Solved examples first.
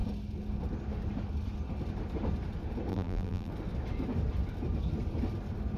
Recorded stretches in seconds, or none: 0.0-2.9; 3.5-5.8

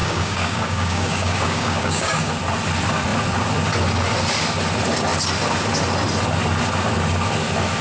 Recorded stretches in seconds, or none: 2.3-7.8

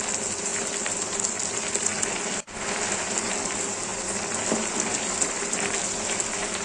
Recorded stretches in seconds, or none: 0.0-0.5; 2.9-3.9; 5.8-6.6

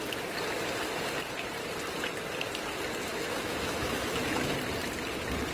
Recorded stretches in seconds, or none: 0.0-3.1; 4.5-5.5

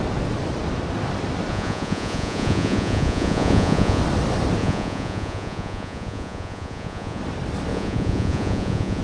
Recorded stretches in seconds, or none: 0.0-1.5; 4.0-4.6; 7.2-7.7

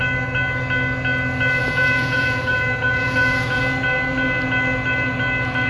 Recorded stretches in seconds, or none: 0.0-1.6; 3.6-5.7